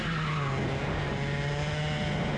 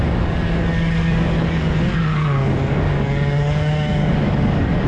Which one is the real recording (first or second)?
first